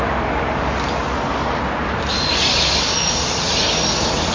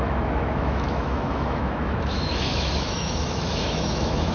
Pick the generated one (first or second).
second